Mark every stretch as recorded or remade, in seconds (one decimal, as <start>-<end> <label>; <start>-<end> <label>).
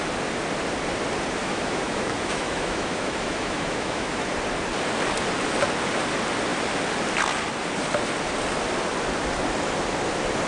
0.0-1.4 recorded; 1.4-4.3 remade; 4.3-10.5 recorded